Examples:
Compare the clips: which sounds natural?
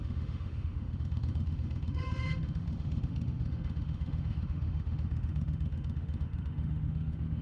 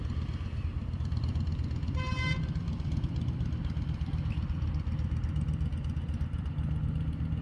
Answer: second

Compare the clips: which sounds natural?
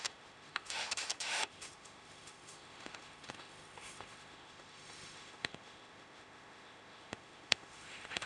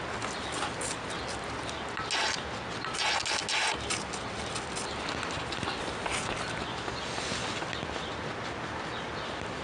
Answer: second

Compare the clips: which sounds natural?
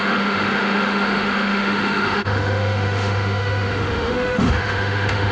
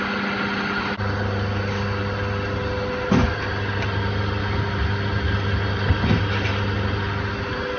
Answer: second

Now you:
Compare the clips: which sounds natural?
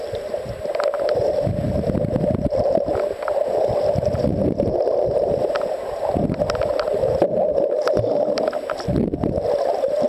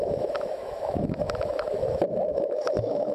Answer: first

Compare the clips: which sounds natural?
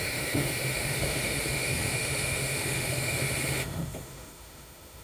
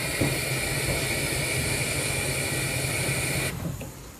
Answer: second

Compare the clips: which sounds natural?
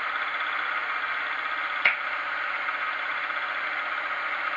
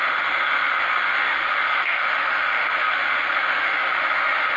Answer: first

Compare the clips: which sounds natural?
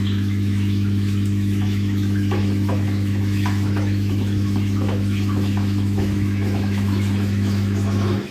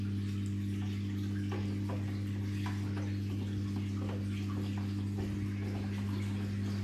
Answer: second